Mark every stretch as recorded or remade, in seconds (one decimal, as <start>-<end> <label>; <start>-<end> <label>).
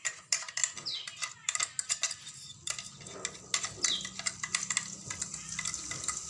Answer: 0.0-6.3 recorded